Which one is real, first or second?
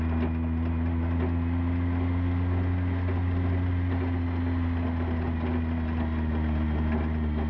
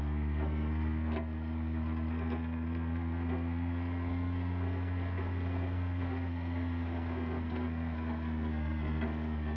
first